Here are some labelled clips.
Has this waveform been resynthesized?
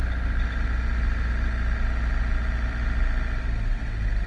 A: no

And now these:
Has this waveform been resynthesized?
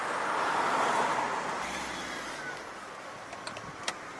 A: no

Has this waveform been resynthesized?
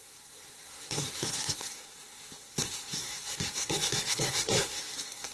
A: yes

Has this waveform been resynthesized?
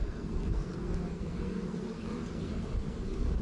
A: yes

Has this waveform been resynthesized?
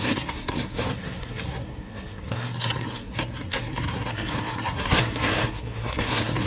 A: yes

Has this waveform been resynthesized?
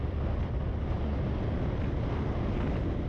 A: no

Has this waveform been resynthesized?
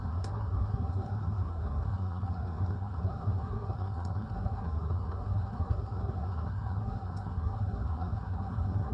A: yes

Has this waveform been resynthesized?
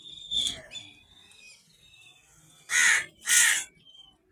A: no